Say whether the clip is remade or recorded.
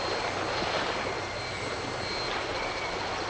recorded